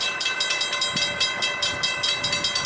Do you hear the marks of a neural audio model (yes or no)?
no